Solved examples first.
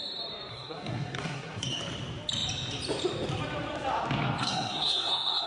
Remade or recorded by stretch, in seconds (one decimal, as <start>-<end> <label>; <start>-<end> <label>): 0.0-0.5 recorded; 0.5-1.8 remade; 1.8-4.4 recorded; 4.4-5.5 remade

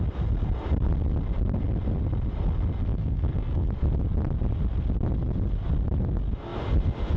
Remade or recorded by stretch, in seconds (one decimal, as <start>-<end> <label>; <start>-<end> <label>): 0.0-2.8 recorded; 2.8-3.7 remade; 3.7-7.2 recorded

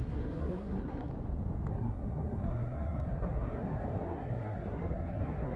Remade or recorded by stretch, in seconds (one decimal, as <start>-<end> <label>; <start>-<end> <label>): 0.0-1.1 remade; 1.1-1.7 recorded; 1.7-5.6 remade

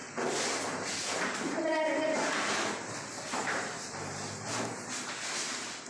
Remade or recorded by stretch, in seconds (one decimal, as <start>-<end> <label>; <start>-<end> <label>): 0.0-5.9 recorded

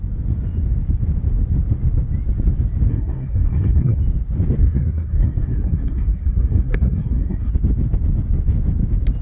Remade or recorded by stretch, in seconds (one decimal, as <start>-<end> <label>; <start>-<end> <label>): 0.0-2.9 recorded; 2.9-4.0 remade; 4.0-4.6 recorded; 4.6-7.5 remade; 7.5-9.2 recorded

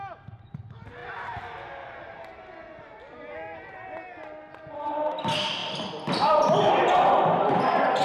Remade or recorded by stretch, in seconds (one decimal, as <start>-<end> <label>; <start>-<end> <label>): 0.0-8.0 recorded

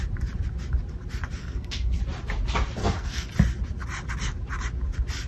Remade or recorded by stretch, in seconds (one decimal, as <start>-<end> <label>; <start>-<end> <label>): 0.0-1.4 recorded; 1.4-2.0 remade; 2.0-2.8 recorded; 2.8-3.3 remade; 3.3-5.3 recorded

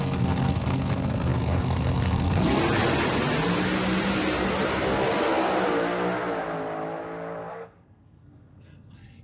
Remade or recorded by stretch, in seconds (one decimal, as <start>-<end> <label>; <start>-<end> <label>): 0.0-2.6 remade; 2.6-7.5 recorded; 7.5-9.2 remade